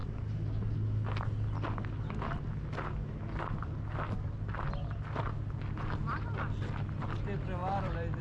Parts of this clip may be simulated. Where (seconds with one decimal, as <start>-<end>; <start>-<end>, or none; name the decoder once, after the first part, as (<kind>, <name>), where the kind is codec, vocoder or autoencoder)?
7.6-8.2 (vocoder, BigVGAN v2)